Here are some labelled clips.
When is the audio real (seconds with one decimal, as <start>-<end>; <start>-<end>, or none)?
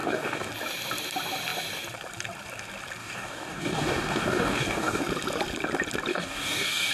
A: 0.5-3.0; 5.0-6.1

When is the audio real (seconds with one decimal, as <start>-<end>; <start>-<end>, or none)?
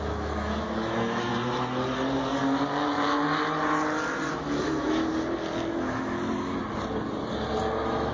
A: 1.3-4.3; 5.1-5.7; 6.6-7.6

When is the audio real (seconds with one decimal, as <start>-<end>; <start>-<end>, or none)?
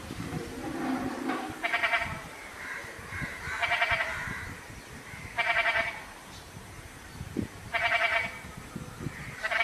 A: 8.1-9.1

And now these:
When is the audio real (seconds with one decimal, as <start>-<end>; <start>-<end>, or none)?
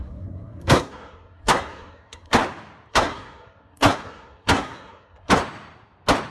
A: 2.4-2.9; 5.4-6.3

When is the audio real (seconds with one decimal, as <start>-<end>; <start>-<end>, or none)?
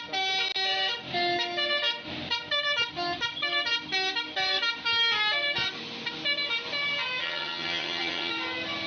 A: 0.0-7.2; 8.3-8.9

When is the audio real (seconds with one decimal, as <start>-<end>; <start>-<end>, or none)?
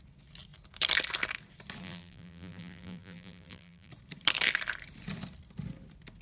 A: 0.0-1.8; 3.9-6.2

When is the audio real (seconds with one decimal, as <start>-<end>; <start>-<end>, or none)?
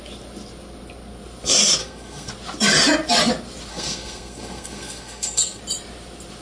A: 0.0-1.8; 2.3-3.7; 5.6-6.4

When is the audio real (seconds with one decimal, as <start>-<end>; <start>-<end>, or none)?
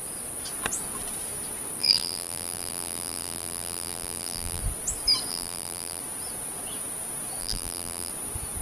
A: 0.0-1.8; 4.6-5.3; 6.0-7.4; 8.1-8.6